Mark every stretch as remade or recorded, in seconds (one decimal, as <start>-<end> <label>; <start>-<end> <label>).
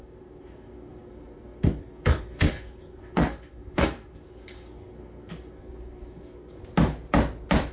0.0-6.6 remade; 6.6-7.7 recorded